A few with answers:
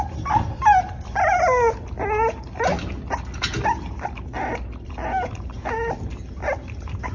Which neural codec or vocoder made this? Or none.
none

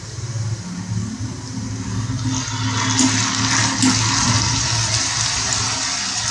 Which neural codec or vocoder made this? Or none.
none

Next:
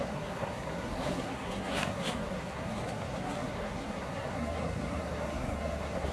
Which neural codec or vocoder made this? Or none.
codec, SNAC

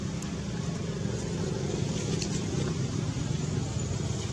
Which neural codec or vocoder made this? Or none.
none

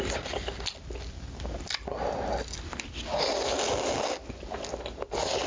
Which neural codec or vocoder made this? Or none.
none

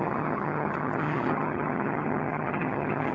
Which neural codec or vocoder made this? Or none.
vocoder, HiFi-GAN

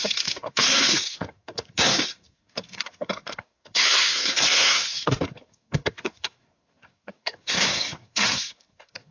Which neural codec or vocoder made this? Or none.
codec, SNAC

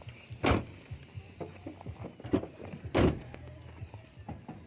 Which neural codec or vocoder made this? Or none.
none